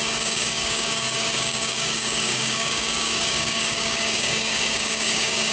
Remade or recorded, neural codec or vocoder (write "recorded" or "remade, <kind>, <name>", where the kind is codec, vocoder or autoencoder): remade, codec, DAC